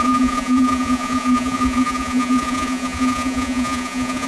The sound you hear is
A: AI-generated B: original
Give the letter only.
A